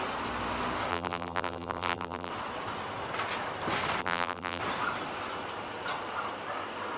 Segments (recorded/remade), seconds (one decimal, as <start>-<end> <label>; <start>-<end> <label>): 0.0-0.9 recorded; 0.9-2.3 remade; 2.3-4.0 recorded; 4.0-4.6 remade; 4.6-7.0 recorded